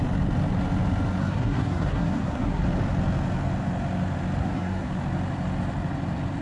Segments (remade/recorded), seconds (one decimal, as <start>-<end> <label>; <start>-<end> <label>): 0.0-1.2 recorded; 1.2-2.6 remade; 2.6-4.4 recorded; 4.4-4.9 remade; 4.9-6.4 recorded